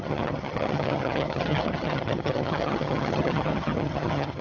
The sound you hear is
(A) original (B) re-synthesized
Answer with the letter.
B